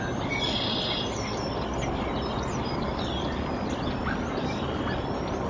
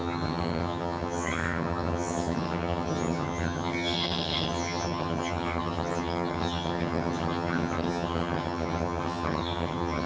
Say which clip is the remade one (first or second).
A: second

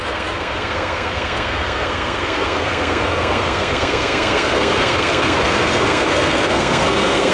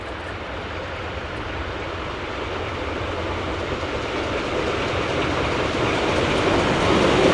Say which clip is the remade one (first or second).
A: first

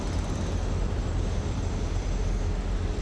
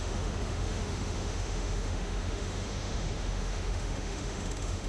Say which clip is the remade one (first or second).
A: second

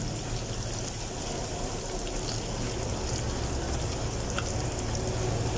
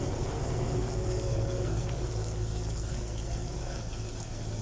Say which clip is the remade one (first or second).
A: second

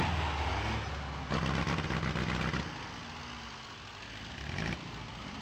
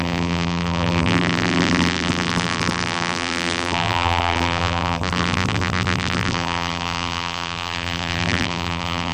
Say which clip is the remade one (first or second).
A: second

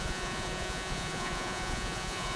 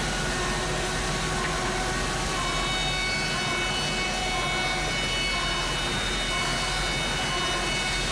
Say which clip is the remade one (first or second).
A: first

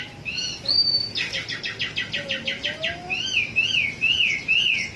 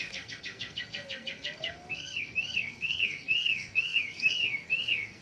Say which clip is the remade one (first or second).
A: second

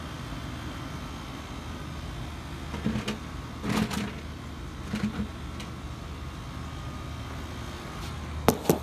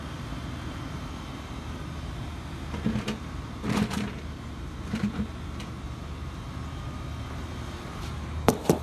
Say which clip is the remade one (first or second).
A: second